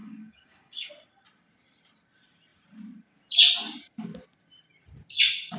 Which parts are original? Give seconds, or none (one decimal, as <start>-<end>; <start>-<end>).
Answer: 0.9-5.6